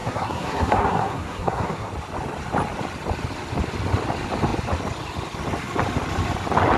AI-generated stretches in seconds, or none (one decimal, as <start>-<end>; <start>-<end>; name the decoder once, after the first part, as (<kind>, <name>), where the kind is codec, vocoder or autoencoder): 0.0-1.9 (codec, SNAC)